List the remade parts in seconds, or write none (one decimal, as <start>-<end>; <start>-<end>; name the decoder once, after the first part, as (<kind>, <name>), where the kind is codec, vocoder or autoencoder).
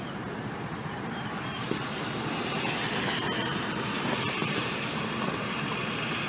0.0-6.3 (vocoder, BigVGAN v2)